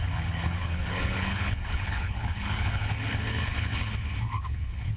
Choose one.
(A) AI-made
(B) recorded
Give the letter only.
A